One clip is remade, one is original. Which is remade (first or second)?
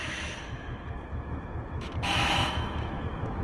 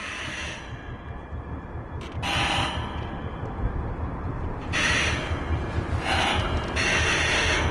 first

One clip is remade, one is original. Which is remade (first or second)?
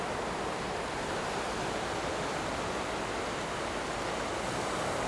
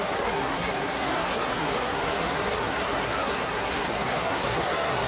second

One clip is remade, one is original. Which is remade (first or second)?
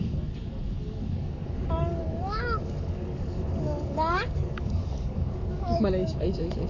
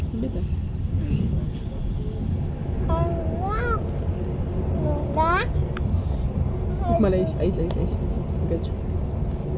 first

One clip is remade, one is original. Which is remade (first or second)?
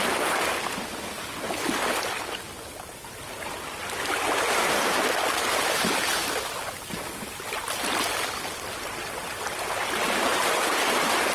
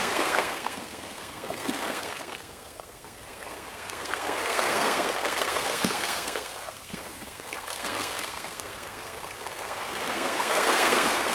second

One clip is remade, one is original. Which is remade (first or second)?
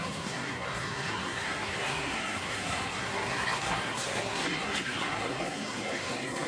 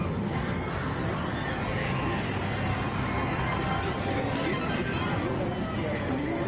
first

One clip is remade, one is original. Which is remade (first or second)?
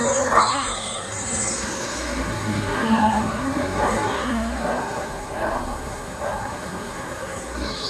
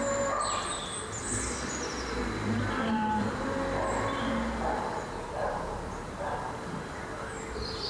first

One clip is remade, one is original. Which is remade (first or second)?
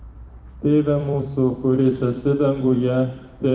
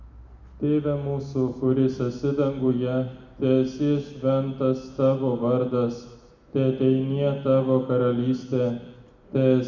first